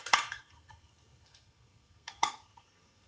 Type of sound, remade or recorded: remade